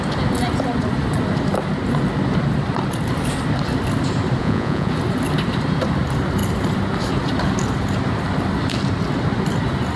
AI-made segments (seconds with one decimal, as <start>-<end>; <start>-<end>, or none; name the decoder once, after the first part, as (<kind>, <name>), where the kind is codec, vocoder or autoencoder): 4.4-4.9 (vocoder, Vocos)